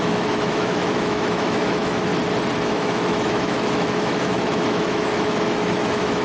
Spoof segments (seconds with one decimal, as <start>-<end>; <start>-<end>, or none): 0.0-2.1; 2.6-6.2